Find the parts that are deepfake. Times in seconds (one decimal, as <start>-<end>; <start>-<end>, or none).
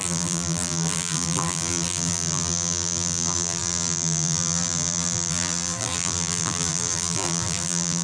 0.0-8.0